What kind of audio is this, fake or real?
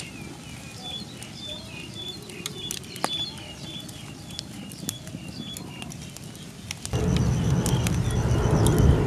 real